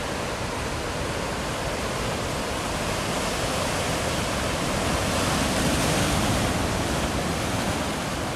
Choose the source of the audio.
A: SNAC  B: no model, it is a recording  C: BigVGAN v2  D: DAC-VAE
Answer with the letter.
B